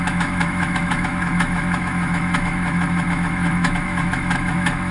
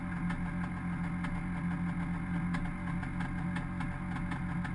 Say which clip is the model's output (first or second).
first